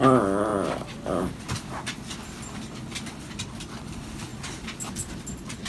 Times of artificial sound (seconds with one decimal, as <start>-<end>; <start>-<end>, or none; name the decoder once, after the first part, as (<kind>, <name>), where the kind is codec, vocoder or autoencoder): none